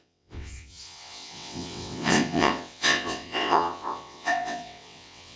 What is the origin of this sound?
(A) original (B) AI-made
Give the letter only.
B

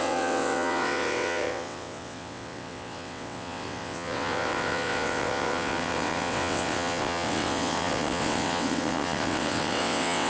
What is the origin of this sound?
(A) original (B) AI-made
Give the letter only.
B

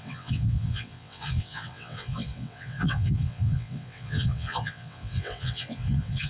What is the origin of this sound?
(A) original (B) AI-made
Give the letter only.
B